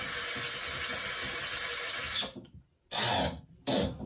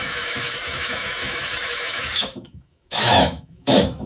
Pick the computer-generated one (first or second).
second